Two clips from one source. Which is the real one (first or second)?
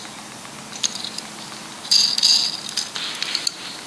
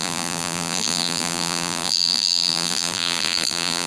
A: first